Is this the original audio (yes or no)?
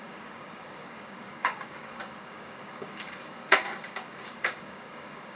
no